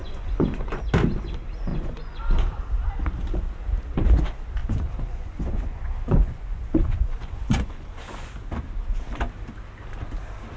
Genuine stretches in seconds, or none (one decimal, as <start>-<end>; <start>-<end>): 0.8-1.7; 2.2-4.6; 8.3-10.6